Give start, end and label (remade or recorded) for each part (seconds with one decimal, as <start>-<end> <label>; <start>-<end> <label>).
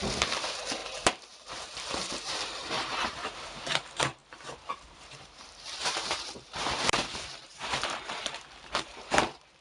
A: 0.0-9.6 remade